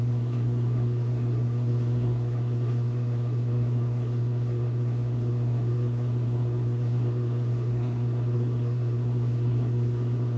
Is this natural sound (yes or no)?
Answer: no